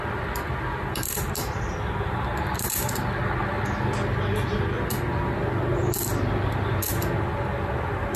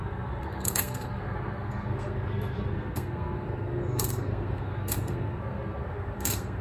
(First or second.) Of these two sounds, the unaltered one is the first